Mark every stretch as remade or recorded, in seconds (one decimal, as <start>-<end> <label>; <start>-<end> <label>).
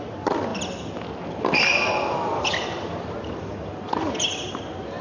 0.0-0.5 recorded; 0.5-3.5 remade; 3.5-5.0 recorded